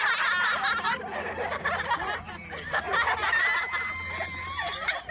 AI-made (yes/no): no